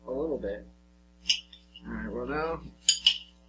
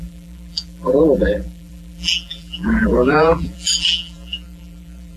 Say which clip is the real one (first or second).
first